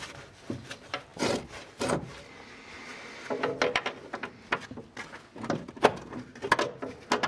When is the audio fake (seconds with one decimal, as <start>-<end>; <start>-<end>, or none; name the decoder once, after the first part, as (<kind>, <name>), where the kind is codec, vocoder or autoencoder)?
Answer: 1.1-2.2 (vocoder, BigVGAN v2)